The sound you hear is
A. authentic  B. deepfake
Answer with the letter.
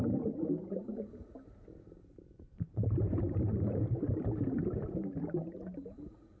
B